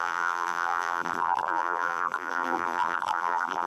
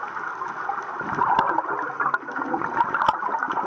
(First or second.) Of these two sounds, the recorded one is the second